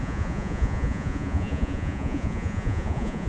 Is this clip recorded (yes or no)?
no